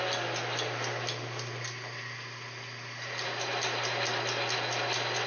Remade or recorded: recorded